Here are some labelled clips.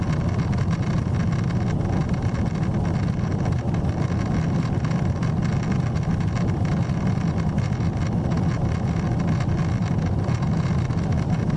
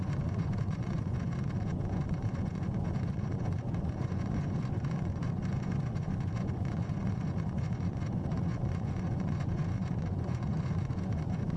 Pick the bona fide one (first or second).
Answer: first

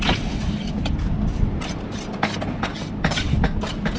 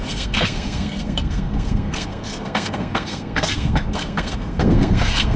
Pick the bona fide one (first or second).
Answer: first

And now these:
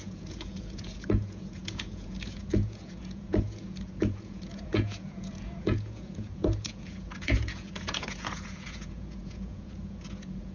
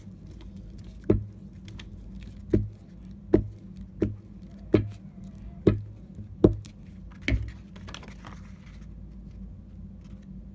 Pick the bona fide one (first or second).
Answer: second